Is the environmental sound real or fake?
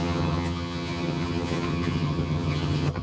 fake